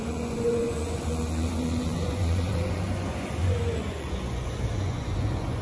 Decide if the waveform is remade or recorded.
remade